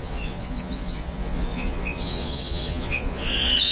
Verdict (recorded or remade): remade